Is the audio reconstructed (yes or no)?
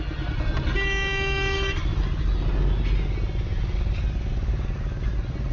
no